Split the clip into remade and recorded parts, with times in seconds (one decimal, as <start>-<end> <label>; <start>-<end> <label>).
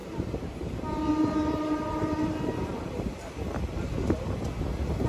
0.0-3.1 remade; 3.1-5.1 recorded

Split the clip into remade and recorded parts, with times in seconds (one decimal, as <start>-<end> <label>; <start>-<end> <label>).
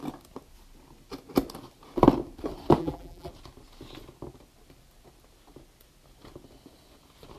0.0-2.8 recorded; 2.8-3.3 remade; 3.3-7.4 recorded